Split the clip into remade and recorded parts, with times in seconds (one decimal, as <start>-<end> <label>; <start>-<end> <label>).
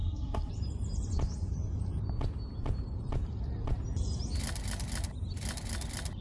0.0-0.5 remade; 0.5-6.2 recorded